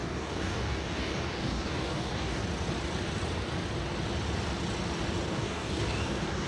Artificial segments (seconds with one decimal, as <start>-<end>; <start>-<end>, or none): 0.0-2.4; 5.3-6.5